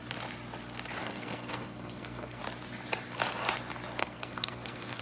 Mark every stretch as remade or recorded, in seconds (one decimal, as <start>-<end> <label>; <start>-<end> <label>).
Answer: 0.0-1.0 recorded; 1.0-2.4 remade; 2.4-4.0 recorded; 4.0-5.0 remade